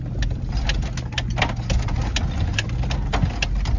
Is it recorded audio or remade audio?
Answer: recorded